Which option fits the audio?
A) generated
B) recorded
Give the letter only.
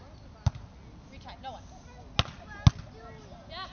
B